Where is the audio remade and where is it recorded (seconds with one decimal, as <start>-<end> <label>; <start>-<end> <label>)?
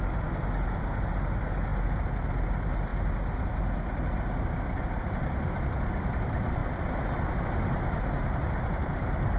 0.0-9.4 recorded